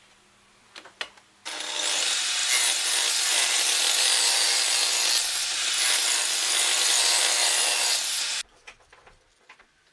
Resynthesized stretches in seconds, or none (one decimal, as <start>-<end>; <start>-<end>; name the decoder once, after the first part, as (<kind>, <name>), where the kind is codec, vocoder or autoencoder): none